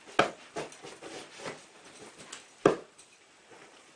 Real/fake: real